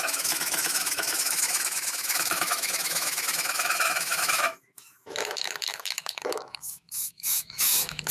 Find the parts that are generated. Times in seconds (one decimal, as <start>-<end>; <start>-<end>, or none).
0.0-8.1